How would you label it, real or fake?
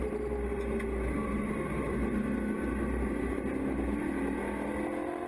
real